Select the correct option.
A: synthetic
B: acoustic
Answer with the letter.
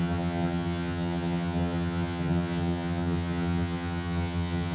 A